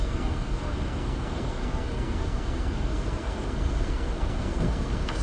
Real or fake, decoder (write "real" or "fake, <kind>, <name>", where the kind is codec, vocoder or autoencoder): fake, codec, SNAC